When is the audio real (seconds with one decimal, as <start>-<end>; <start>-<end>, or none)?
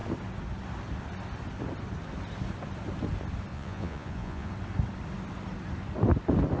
0.0-3.5; 4.5-6.6